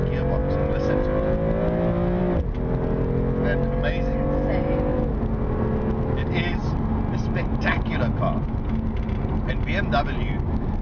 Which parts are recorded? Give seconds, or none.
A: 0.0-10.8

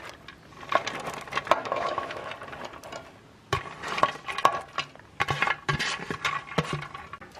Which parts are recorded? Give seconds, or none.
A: 0.0-1.6; 2.3-7.4

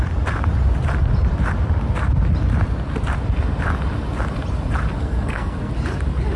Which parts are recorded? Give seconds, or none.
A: 0.0-5.0; 5.7-6.4

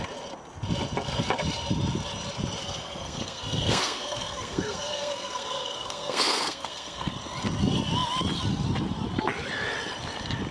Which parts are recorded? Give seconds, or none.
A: 0.0-2.6; 7.1-10.5